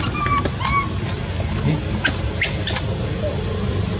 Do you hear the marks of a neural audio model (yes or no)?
no